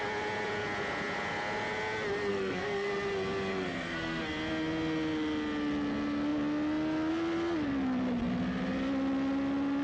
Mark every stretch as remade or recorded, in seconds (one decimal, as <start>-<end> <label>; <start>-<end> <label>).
0.0-2.3 recorded; 2.3-2.9 remade; 2.9-3.5 recorded; 3.5-4.2 remade; 4.2-9.8 recorded